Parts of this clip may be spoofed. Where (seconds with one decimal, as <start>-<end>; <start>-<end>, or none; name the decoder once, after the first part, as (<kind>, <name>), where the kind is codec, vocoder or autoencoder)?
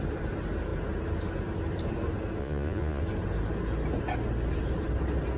2.4-3.0 (vocoder, Vocos)